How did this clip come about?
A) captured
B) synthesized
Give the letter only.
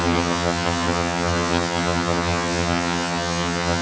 B